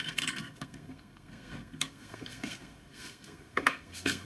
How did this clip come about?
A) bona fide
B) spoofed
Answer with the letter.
B